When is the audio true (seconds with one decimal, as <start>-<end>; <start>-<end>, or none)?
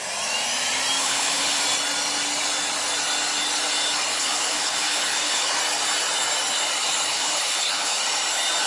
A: 0.0-1.0; 1.6-4.1; 5.6-7.1; 8.0-8.7